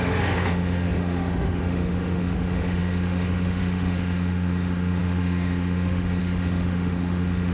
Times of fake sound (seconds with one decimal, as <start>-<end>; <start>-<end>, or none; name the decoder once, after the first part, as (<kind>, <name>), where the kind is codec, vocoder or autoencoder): 0.0-7.5 (autoencoder, DAC-VAE)

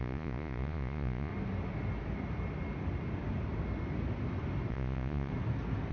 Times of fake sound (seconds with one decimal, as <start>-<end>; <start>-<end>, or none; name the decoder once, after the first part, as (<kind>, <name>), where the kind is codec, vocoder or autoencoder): 0.0-1.3 (vocoder, Vocos); 4.7-5.3

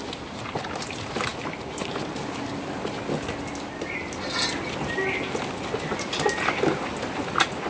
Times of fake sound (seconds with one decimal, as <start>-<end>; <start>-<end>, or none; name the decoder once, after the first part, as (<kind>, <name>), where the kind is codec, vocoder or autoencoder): none